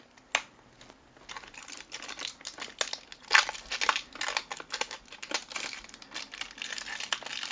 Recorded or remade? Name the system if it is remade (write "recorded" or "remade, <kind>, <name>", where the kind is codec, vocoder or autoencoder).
recorded